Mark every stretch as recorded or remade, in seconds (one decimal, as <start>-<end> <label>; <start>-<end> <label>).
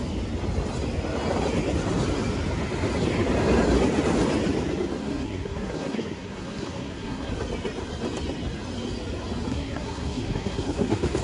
0.0-5.0 recorded; 5.0-7.3 remade; 7.3-9.5 recorded; 9.5-11.2 remade